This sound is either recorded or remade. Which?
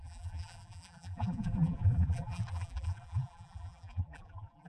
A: remade